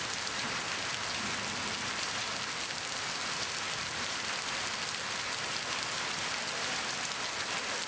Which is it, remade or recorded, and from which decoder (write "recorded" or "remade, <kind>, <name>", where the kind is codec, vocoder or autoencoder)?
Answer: recorded